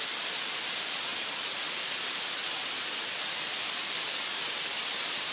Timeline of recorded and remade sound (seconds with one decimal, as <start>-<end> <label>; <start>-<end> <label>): 0.0-5.3 recorded

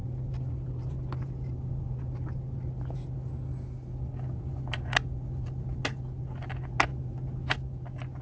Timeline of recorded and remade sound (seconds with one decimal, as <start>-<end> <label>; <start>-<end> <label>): 0.0-8.2 recorded

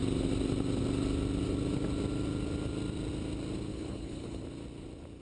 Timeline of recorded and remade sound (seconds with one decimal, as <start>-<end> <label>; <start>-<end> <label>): 0.0-3.7 recorded; 3.7-4.4 remade; 4.4-5.2 recorded

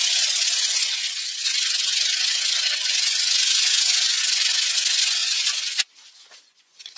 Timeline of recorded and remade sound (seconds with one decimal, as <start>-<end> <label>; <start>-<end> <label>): 0.0-4.2 remade; 4.2-5.2 recorded; 5.2-7.0 remade

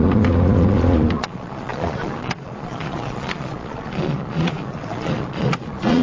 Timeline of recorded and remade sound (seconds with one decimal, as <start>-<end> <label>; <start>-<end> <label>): 0.0-6.0 remade

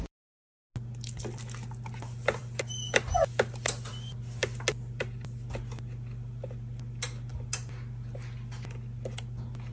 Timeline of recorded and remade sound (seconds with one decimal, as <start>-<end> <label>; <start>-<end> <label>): 0.0-9.7 recorded